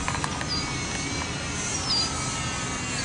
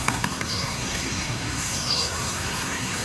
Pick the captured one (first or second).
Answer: first